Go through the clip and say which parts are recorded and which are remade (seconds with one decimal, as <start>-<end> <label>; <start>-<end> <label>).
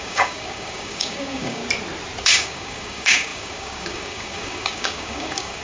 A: 0.0-1.6 remade; 1.6-2.2 recorded; 2.2-5.6 remade